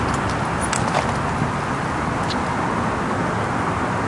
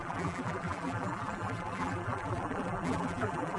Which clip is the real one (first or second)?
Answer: first